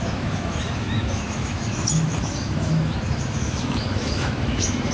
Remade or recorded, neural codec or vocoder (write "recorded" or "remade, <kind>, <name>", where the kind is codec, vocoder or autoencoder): remade, autoencoder, DAC-VAE